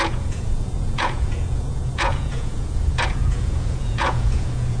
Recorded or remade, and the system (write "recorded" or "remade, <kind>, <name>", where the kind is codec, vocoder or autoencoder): remade, vocoder, Vocos